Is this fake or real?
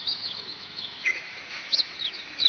fake